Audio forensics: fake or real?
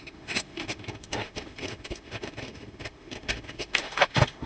fake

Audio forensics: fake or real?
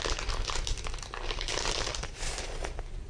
real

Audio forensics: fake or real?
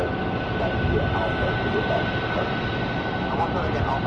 real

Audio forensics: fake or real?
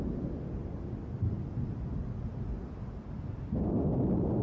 real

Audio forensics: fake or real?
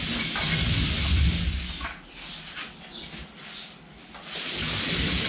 real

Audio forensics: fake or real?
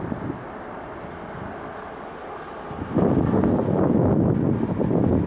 real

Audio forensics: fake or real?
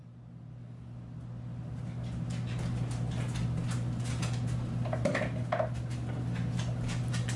real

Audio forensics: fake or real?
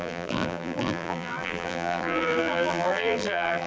fake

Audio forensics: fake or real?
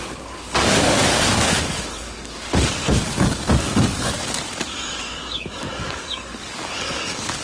fake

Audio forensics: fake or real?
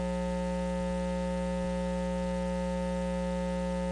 real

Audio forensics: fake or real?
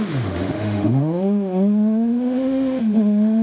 fake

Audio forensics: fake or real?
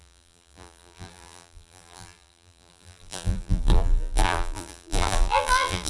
fake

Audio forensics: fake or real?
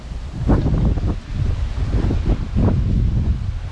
real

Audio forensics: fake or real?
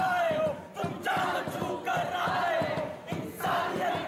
real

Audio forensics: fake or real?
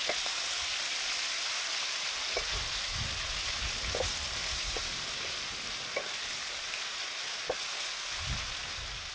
real